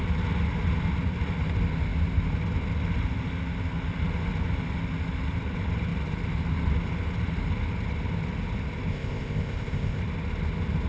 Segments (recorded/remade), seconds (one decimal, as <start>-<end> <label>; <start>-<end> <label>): 0.0-8.9 recorded; 8.9-10.0 remade; 10.0-10.9 recorded